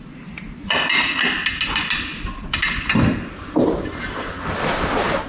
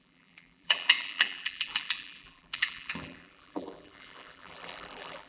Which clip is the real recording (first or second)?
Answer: first